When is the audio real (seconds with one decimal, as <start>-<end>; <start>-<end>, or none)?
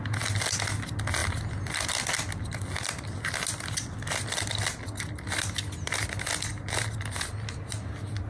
0.0-8.3